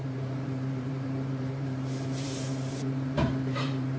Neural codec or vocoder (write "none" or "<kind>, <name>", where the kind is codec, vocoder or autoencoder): vocoder, BigVGAN v2